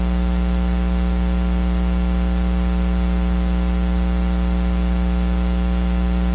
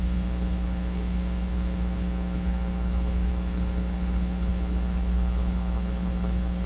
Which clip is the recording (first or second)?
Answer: first